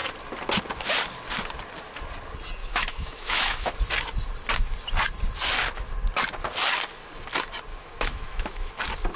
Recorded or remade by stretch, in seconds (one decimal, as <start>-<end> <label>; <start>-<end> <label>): 0.0-2.6 recorded; 2.6-3.7 remade; 3.7-7.7 recorded; 7.7-8.7 remade; 8.7-9.2 recorded